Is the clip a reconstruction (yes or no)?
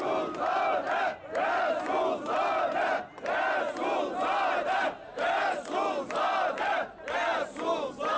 no